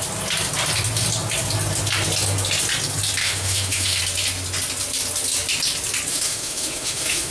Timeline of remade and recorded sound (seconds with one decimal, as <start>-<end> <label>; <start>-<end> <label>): 0.0-3.2 recorded; 3.2-4.0 remade; 4.0-6.1 recorded; 6.1-7.3 remade